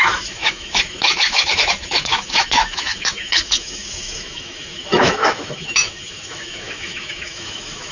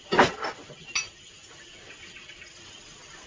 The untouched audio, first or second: second